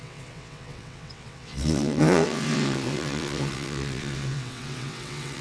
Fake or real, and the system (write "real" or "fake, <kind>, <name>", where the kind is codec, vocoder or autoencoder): fake, vocoder, WaveNeXt